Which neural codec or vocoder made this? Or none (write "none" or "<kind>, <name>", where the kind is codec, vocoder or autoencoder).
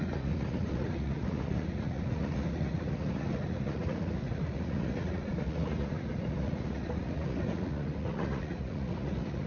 vocoder, Vocos